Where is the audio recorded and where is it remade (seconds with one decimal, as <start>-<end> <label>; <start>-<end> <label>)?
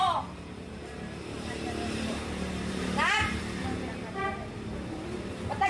0.0-3.4 remade; 3.4-5.7 recorded